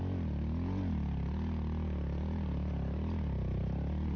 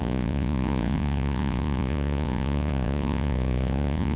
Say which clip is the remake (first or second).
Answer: second